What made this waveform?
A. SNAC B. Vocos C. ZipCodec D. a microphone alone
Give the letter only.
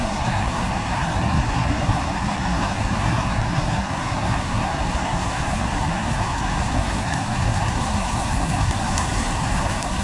A